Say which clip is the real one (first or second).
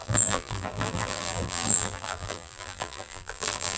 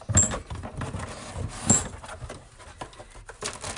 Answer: second